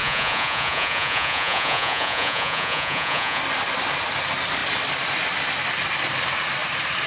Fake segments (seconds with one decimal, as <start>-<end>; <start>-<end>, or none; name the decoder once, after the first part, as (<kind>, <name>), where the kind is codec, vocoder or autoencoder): 0.0-3.4 (vocoder, Vocos)